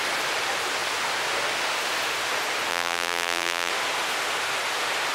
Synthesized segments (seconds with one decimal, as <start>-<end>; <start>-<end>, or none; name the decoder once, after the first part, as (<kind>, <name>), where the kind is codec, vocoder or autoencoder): 2.7-3.7 (vocoder, BigVGAN v2)